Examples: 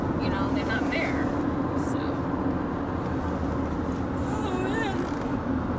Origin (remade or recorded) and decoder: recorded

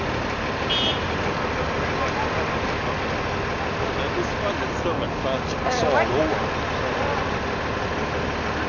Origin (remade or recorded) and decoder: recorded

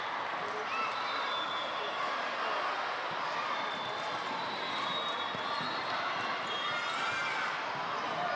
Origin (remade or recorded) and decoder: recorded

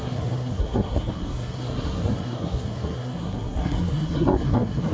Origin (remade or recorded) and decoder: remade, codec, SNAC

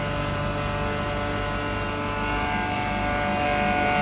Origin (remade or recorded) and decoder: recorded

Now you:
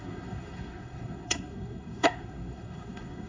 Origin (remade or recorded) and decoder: remade, codec, SNAC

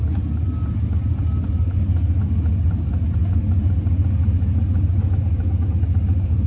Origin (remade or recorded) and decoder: recorded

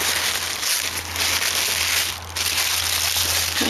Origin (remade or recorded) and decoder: recorded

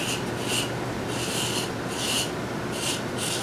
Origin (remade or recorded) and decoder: recorded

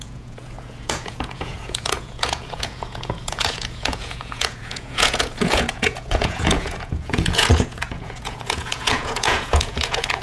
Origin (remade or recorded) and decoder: remade, vocoder, Vocos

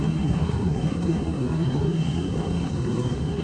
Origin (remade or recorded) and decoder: remade, codec, SNAC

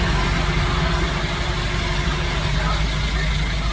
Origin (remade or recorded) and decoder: recorded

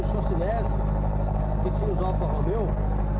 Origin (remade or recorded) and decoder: recorded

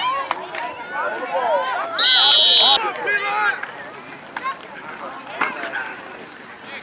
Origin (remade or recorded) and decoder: recorded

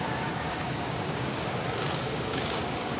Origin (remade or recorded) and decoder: remade, codec, DAC